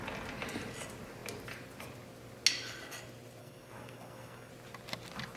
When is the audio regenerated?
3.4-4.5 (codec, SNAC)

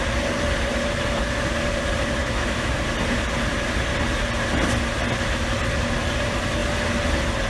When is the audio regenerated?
2.2-2.7 (autoencoder, DAC-VAE)

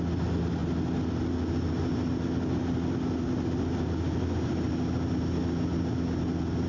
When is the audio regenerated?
none